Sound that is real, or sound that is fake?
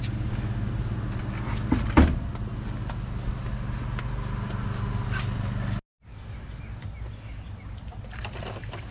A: real